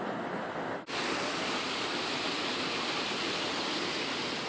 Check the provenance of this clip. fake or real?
real